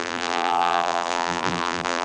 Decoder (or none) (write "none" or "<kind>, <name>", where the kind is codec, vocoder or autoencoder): vocoder, BigVGAN v2